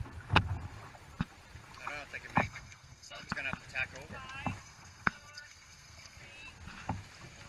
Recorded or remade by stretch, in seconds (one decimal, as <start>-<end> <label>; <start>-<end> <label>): 0.0-2.4 recorded; 2.4-3.3 remade; 3.3-4.6 recorded; 4.6-6.2 remade; 6.2-7.5 recorded